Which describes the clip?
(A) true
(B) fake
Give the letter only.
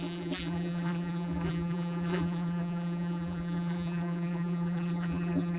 B